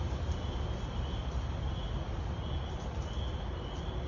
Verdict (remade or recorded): recorded